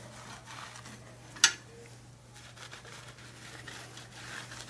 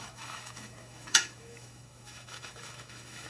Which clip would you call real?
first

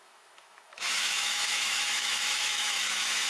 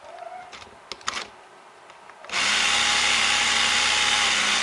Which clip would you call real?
second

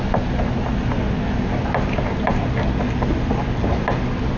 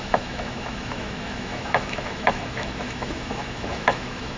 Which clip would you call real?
first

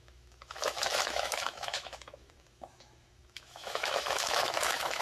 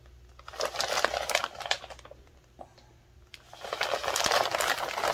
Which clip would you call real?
second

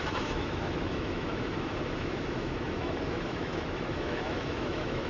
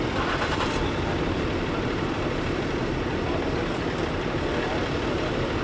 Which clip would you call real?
second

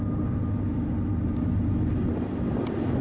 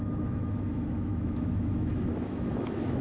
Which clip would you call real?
first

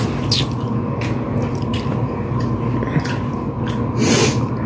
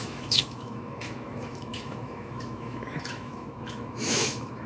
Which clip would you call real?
first